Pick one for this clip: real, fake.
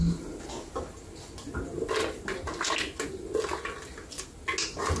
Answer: real